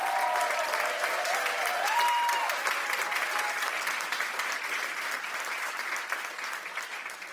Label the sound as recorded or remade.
recorded